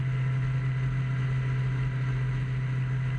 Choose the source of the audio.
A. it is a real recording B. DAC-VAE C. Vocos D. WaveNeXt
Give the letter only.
A